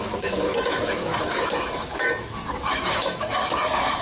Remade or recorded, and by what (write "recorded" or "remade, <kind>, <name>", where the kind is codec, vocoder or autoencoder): remade, autoencoder, DAC-VAE